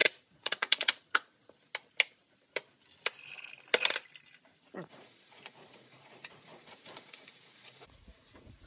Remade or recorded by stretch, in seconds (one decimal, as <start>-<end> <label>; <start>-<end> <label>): 0.0-1.4 remade; 1.4-4.5 recorded; 4.5-8.7 remade